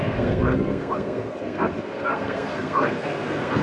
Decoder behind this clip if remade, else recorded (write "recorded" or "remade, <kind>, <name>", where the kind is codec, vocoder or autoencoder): remade, codec, SNAC